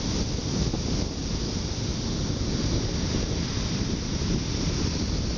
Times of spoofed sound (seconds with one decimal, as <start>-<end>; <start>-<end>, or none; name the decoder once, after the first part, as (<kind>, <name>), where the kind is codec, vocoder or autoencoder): none